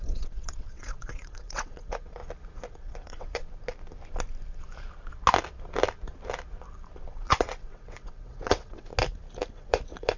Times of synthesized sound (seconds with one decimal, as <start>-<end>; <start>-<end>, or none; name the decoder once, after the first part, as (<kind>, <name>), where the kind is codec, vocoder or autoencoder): 0.0-2.2 (vocoder, WaveNeXt); 2.7-3.4; 7.1-8.9; 9.5-10.2